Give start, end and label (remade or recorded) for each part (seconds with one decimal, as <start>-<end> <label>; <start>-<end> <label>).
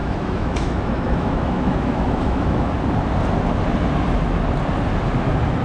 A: 0.0-2.7 remade; 2.7-5.6 recorded